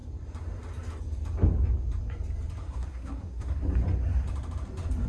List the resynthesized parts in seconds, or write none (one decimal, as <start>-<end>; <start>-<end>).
2.6-3.6